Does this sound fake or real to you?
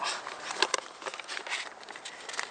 real